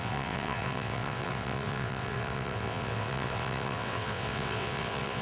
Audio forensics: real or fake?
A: fake